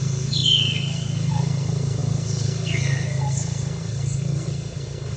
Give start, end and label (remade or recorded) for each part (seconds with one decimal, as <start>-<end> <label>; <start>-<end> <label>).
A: 0.0-5.2 remade